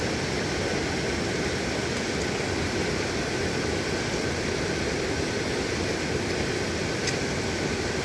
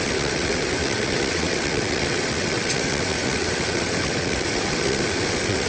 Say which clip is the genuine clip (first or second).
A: first